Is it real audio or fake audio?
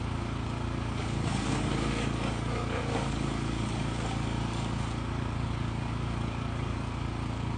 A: fake